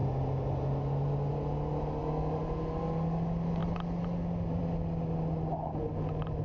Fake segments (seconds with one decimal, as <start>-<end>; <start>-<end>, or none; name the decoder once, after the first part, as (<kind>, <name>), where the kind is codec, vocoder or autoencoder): none